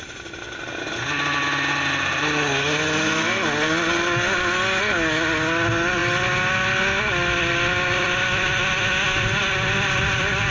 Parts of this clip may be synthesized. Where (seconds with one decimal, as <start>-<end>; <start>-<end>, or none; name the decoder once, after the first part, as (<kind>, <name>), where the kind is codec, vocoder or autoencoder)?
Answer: none